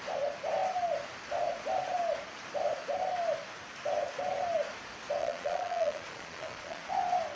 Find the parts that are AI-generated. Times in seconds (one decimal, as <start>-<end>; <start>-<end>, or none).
5.2-6.9